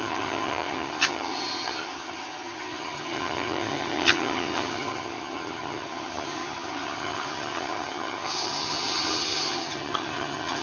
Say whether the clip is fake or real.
fake